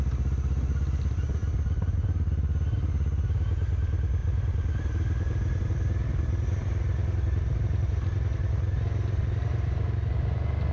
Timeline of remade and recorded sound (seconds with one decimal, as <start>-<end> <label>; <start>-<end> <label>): 0.0-4.2 recorded; 4.2-9.2 remade; 9.2-10.7 recorded